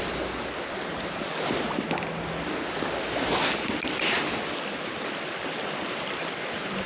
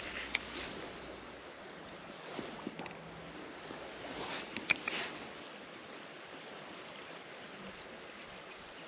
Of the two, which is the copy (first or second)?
second